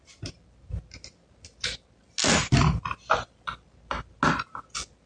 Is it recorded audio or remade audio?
recorded